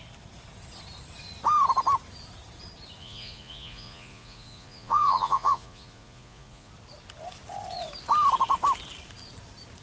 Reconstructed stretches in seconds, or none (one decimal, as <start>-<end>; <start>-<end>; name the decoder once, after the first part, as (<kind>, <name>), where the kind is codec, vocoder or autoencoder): 3.0-6.7 (vocoder, Vocos)